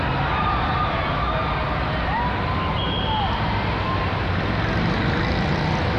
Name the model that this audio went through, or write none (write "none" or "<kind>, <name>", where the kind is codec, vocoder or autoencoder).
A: none